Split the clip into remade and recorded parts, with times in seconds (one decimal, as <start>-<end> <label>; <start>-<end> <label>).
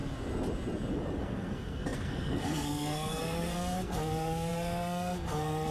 0.0-1.2 recorded; 1.2-5.7 remade